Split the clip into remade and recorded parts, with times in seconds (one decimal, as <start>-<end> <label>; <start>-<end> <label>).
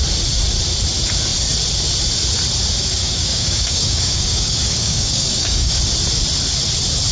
0.0-3.0 recorded; 3.0-5.8 remade; 5.8-7.1 recorded